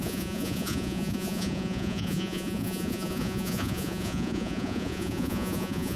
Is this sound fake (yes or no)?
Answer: yes